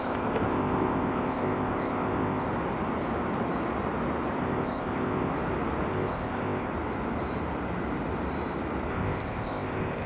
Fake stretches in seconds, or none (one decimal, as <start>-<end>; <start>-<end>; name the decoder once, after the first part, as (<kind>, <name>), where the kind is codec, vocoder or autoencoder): 0.0-2.5 (codec, ZipCodec); 4.4-5.3; 5.9-6.7; 8.9-10.1